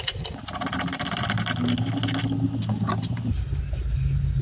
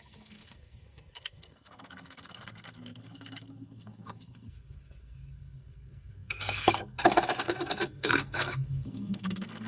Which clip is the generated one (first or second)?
second